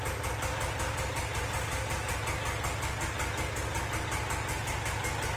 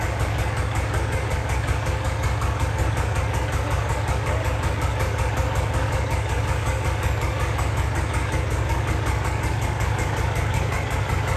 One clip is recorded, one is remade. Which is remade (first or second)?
second